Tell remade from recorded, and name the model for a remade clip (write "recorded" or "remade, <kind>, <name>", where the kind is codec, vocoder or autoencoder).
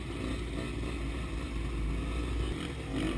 recorded